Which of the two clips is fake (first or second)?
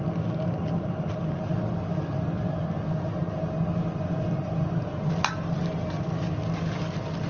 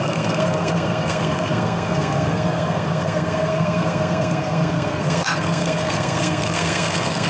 second